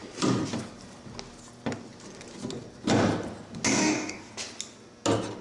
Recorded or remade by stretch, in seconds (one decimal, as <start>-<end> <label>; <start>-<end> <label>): 0.0-3.7 recorded; 3.7-4.3 remade; 4.3-5.4 recorded